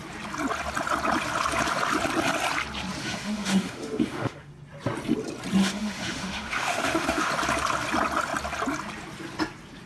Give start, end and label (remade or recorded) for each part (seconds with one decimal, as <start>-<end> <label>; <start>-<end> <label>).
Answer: 0.0-3.0 recorded; 3.0-4.5 remade; 4.5-5.6 recorded; 5.6-7.3 remade; 7.3-9.9 recorded